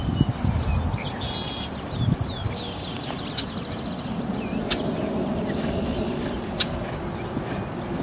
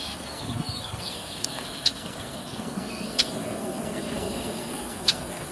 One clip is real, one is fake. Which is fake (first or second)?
second